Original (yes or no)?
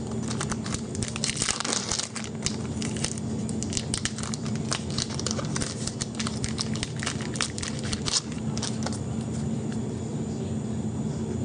yes